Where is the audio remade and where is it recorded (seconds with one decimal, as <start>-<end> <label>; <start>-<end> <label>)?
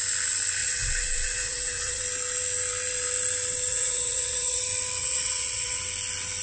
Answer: 0.0-0.6 recorded; 0.6-2.0 remade; 2.0-3.7 recorded; 3.7-4.6 remade; 4.6-5.0 recorded; 5.0-5.8 remade; 5.8-6.4 recorded